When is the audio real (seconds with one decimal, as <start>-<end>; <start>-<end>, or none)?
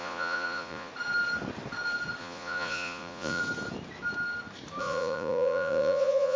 0.9-2.2; 3.4-4.8